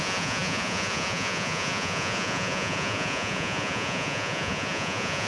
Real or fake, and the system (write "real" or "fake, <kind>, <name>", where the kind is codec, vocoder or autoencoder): fake, vocoder, Vocos